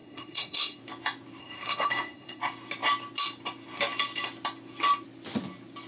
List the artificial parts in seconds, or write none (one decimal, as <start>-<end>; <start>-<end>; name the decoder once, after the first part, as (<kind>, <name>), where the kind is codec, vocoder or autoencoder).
0.0-0.8 (codec, SNAC); 1.4-2.4